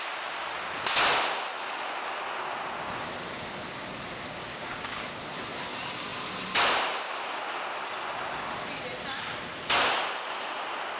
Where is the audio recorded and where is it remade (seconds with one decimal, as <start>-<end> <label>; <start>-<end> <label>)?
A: 0.0-4.4 recorded; 4.4-5.1 remade; 5.1-11.0 recorded